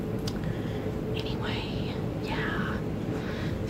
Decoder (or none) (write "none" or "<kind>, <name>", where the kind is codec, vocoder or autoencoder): none